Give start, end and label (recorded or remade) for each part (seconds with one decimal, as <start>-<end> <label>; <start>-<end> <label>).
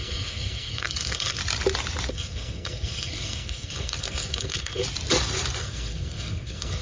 0.0-1.4 remade; 1.4-2.1 recorded; 2.1-4.8 remade; 4.8-5.6 recorded; 5.6-6.8 remade